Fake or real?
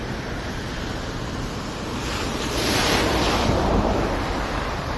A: fake